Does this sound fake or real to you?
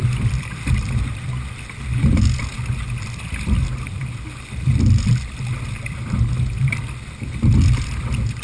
real